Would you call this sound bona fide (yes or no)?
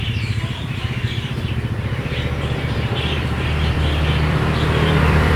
no